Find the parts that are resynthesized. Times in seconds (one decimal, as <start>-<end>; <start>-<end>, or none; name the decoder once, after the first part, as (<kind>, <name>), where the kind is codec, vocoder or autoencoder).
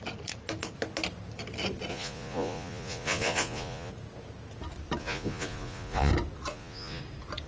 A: 1.9-3.9 (vocoder, Vocos); 5.0-6.1; 6.5-7.0